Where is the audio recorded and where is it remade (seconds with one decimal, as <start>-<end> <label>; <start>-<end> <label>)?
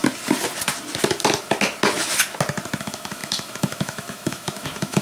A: 0.0-2.8 recorded; 2.8-5.0 remade